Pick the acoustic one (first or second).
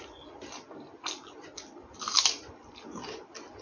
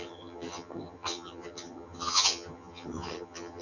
first